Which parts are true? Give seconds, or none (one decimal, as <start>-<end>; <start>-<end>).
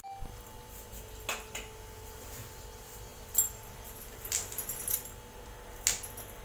0.0-3.1; 4.3-6.4